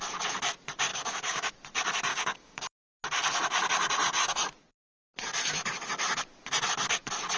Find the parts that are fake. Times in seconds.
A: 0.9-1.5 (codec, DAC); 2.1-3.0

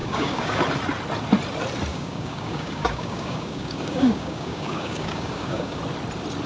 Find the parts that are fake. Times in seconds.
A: 0.0-0.6 (codec, DAC); 1.9-5.8

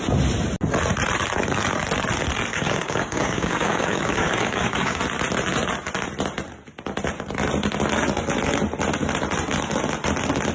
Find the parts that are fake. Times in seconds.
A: 2.5-5.0 (codec, DAC)